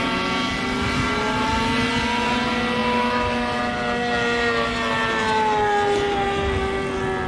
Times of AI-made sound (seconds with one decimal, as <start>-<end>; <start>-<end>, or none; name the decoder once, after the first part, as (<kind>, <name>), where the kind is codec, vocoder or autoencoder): none